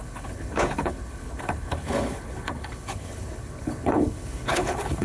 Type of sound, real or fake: fake